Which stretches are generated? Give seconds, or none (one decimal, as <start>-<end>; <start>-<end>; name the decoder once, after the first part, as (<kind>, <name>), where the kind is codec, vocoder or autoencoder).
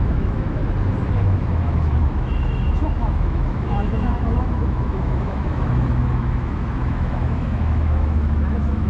0.0-0.6 (autoencoder, DAC-VAE); 1.1-8.9